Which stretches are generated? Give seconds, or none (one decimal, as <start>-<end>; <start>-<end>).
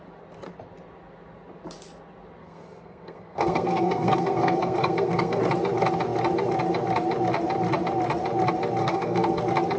2.4-5.4; 8.8-9.4